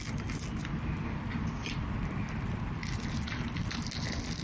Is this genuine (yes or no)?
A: yes